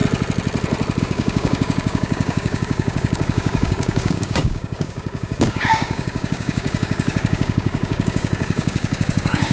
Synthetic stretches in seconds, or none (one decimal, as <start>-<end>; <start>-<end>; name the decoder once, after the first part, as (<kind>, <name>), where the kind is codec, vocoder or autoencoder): 1.0-9.5 (codec, DAC)